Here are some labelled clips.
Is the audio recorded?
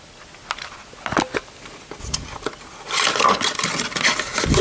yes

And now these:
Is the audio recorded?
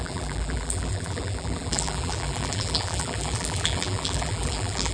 no